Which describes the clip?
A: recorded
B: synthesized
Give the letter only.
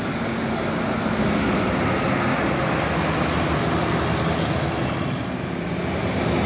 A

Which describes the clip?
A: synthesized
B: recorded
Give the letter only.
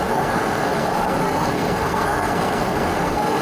A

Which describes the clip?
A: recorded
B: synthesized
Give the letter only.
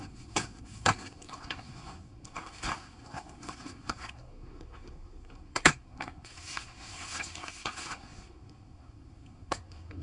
B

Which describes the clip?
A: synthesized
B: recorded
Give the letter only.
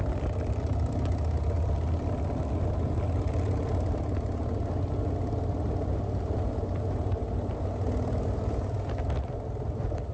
B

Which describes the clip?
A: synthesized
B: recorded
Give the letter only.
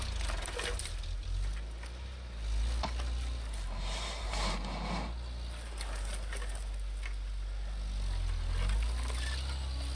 B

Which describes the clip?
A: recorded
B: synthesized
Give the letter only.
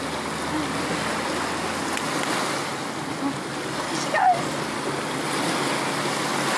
A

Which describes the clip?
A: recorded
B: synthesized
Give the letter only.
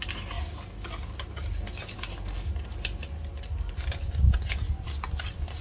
A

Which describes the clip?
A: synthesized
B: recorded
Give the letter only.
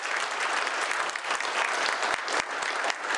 B